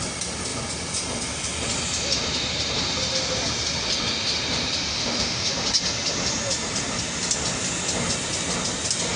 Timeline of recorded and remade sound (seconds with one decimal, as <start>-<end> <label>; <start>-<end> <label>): 0.0-4.9 recorded; 4.9-5.5 remade; 5.5-9.2 recorded